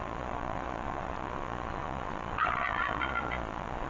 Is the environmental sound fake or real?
fake